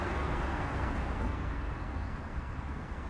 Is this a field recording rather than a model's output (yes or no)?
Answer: no